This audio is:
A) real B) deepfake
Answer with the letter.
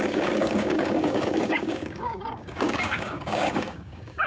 B